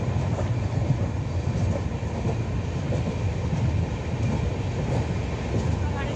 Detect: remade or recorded recorded